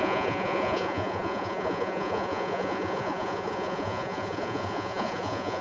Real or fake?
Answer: fake